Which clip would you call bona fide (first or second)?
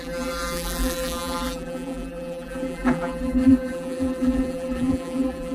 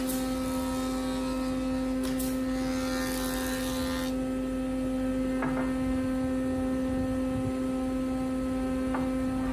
second